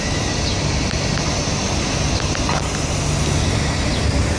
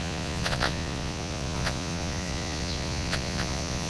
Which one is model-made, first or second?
second